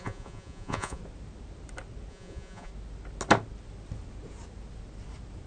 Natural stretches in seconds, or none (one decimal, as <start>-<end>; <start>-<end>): 1.0-2.1; 2.7-5.5